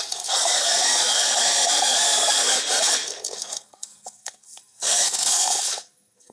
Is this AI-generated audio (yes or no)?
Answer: yes